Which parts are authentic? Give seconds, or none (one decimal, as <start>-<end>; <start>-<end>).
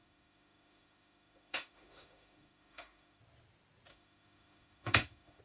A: 3.2-3.9